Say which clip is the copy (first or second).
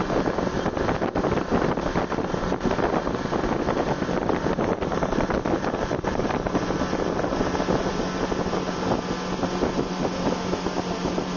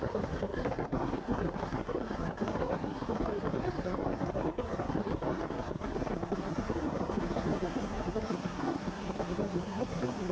second